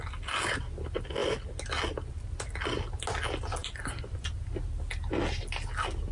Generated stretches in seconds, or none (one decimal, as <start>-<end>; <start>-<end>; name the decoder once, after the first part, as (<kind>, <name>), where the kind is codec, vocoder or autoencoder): 3.6-4.4 (vocoder, BigVGAN v2)